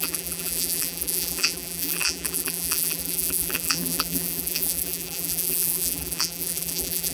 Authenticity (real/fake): fake